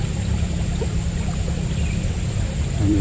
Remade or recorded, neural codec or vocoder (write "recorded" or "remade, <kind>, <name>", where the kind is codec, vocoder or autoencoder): remade, vocoder, BigVGAN v2